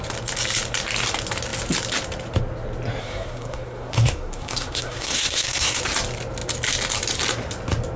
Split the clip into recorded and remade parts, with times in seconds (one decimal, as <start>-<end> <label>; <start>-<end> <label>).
0.0-3.0 recorded; 3.0-5.8 remade; 5.8-8.0 recorded